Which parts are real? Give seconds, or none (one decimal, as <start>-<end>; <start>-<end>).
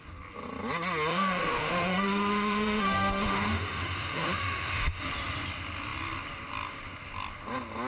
0.0-1.1; 5.0-7.9